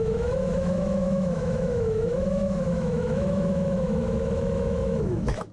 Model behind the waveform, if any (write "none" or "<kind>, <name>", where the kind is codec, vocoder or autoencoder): autoencoder, DAC-VAE